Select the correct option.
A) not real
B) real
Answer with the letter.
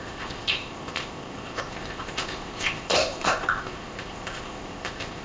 A